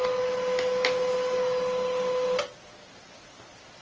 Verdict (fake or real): real